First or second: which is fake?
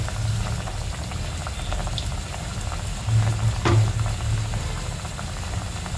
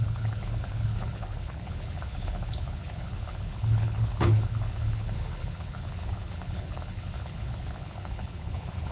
second